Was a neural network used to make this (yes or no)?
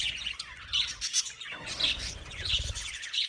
yes